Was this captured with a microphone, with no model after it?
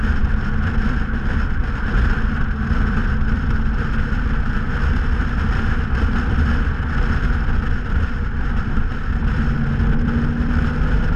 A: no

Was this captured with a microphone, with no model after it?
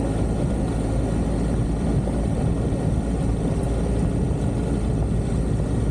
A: yes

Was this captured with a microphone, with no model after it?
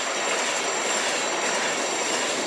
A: yes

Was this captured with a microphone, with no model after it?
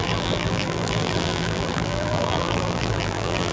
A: no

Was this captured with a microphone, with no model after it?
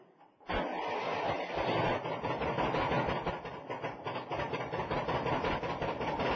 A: yes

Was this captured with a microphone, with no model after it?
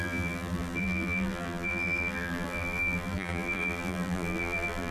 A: no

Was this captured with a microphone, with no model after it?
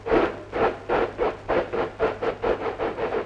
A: yes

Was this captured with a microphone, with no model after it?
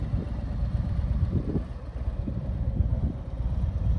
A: no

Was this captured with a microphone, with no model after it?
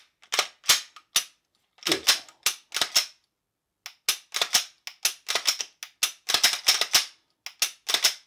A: yes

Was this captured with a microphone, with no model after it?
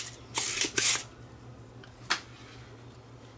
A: yes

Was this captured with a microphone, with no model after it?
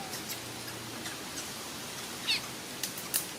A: yes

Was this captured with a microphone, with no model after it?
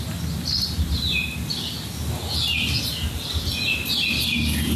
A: yes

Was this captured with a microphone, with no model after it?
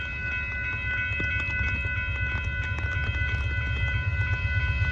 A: yes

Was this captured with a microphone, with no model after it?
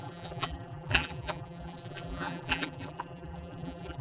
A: no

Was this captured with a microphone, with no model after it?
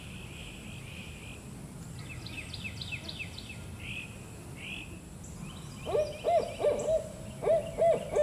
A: yes